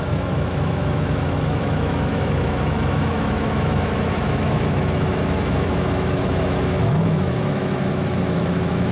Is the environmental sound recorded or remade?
remade